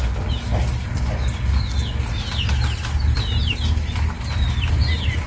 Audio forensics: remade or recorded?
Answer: recorded